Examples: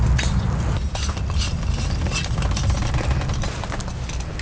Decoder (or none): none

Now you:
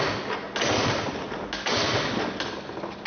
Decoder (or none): none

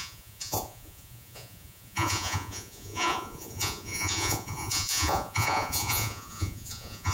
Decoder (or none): vocoder, Vocos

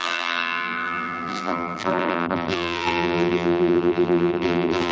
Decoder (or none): vocoder, BigVGAN v2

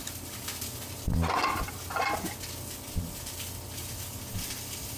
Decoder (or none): none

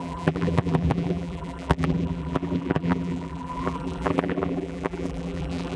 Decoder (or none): vocoder, BigVGAN v2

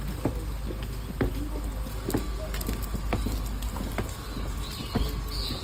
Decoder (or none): none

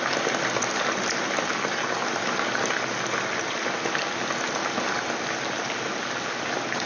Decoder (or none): none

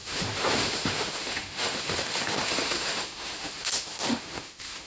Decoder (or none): autoencoder, DAC-VAE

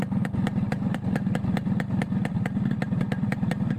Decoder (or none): vocoder, BigVGAN v2